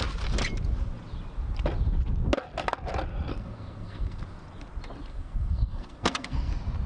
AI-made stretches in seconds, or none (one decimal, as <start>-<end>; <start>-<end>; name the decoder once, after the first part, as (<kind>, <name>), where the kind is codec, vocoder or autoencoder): 3.3-4.2 (codec, SNAC); 5.1-6.5